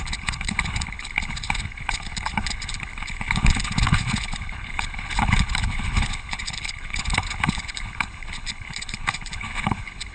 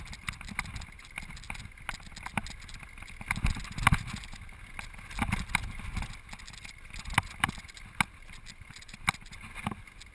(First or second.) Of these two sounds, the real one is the second